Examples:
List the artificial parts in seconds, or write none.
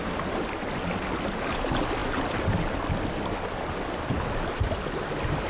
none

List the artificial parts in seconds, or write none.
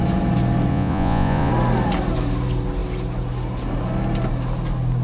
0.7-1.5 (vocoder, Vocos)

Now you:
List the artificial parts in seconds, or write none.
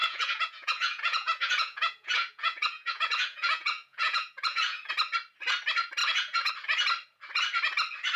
0.0-4.9 (vocoder, Vocos); 6.0-6.5